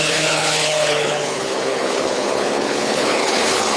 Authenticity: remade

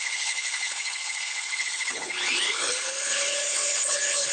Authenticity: remade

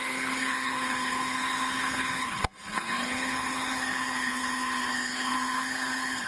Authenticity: remade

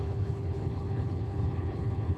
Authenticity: remade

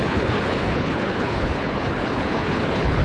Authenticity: remade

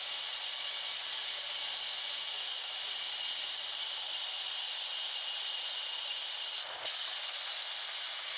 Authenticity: recorded